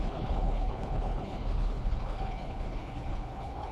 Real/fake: fake